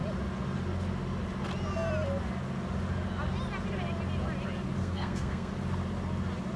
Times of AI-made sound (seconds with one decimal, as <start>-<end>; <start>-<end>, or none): 4.8-5.5